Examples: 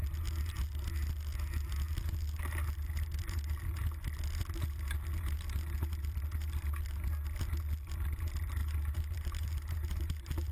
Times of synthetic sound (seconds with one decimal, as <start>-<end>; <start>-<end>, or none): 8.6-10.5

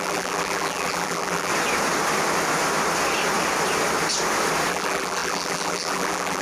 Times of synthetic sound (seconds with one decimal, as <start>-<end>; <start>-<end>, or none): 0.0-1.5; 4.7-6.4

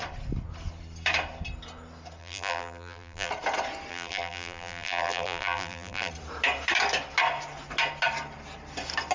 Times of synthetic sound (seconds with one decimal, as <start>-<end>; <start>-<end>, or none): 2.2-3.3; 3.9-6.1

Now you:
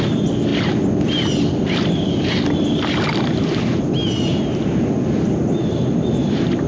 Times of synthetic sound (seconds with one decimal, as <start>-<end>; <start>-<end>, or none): none

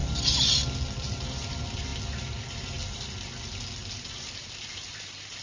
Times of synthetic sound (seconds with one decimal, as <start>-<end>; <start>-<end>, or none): 1.0-1.9; 4.0-5.4

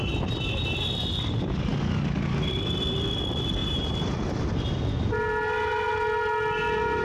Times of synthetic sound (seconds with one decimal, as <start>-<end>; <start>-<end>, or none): 3.6-4.7

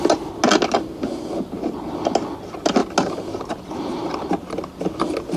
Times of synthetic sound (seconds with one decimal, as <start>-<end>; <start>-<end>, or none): none